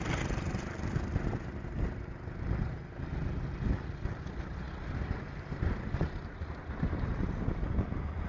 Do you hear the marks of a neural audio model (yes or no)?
no